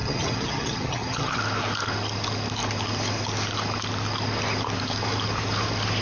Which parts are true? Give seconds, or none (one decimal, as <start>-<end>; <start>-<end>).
1.4-6.0